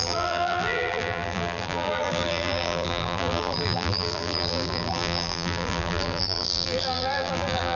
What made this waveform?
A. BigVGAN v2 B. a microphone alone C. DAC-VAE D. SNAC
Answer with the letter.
A